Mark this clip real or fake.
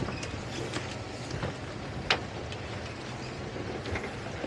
real